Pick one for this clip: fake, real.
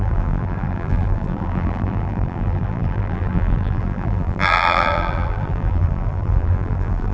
fake